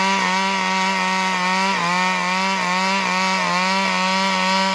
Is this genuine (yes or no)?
yes